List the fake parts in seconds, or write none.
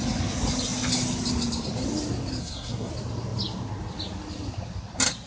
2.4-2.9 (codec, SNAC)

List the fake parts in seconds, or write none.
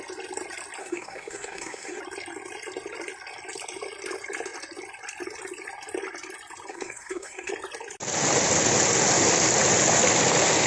0.8-2.0 (codec, SNAC); 6.7-7.5